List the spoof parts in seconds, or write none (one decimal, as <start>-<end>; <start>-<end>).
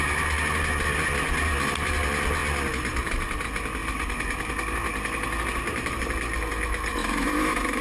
7.0-7.8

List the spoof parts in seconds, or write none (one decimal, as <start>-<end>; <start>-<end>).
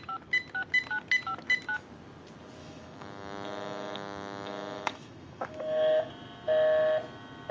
2.6-6.1